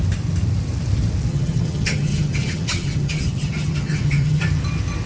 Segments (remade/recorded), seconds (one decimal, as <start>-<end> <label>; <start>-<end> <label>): 0.0-1.3 recorded; 1.3-4.4 remade; 4.4-5.1 recorded